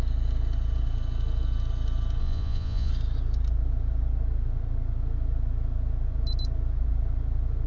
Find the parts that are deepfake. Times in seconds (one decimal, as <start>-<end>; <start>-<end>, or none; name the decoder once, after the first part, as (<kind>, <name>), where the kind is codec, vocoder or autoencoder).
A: 2.2-2.9 (vocoder, Vocos)